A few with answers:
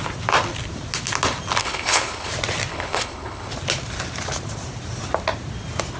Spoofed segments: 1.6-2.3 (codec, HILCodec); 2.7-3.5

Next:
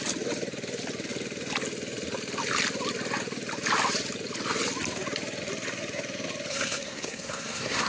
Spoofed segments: 6.5-7.9 (codec, SNAC)